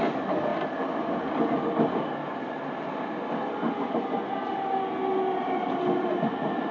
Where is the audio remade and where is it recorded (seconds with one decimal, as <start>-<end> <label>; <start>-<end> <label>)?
0.0-6.7 recorded